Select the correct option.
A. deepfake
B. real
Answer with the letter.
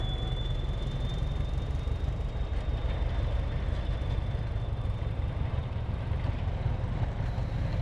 A